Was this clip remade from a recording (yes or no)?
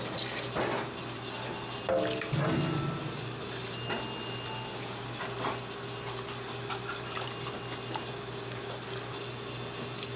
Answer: no